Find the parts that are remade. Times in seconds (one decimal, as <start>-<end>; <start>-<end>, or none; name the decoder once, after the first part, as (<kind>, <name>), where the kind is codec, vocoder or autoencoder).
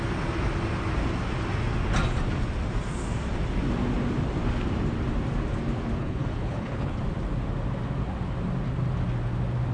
6.0-7.0 (codec, HILCodec)